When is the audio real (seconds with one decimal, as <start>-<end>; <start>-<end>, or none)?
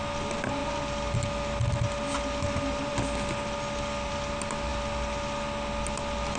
0.0-6.4